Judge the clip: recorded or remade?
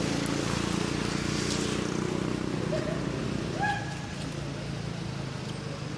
recorded